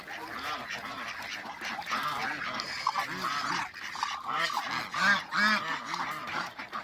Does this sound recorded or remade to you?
recorded